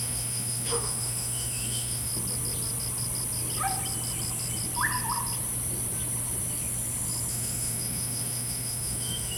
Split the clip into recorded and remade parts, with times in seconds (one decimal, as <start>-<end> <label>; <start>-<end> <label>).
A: 0.0-2.1 remade; 2.1-7.3 recorded; 7.3-9.4 remade